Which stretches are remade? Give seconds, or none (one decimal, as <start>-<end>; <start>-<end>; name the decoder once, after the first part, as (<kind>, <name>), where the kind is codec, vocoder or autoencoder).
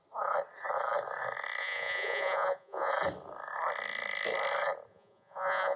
1.6-2.9 (vocoder, Vocos); 4.9-5.8